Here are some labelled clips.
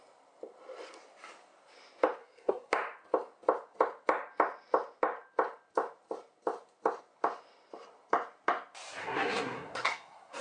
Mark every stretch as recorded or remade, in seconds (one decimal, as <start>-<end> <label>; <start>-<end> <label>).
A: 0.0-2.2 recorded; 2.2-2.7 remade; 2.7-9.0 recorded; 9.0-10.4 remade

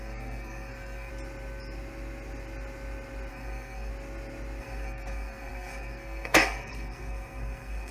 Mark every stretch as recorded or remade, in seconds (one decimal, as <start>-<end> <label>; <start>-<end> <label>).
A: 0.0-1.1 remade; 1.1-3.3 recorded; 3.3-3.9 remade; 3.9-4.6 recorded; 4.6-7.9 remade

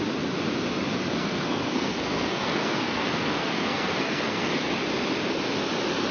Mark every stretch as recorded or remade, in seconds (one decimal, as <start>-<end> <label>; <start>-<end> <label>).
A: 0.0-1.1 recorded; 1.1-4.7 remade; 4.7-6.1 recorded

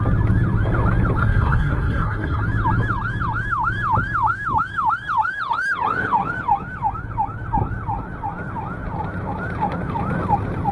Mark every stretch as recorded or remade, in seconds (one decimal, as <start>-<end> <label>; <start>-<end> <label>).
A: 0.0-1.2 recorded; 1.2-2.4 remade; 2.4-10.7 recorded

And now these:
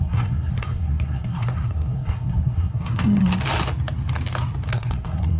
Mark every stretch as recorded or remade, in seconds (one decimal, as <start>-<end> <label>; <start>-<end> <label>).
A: 0.0-3.2 remade; 3.2-4.7 recorded; 4.7-5.4 remade

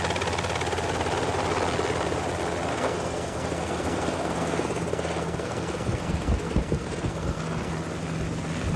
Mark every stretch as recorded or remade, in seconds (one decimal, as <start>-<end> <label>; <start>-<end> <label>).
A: 0.0-2.7 recorded; 2.7-7.7 remade; 7.7-8.8 recorded

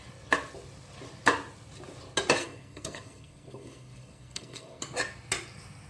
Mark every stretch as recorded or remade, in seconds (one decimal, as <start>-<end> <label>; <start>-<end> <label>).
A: 0.0-2.4 recorded; 2.4-4.8 remade; 4.8-5.9 recorded

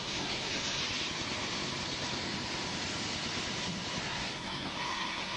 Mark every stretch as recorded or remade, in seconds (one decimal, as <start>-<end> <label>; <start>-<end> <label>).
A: 0.0-0.8 remade; 0.8-4.0 recorded; 4.0-5.4 remade